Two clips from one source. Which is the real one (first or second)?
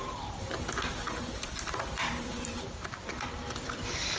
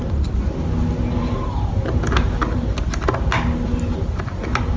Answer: second